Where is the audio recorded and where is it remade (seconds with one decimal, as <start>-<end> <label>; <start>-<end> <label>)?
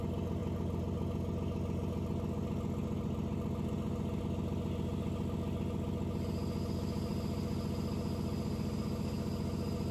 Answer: 0.0-9.9 recorded